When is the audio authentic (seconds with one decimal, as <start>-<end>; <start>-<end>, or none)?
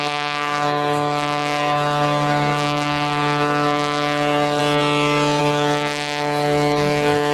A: 4.6-5.4